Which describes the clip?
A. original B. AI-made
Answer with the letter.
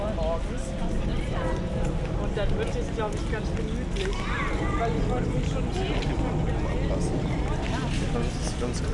A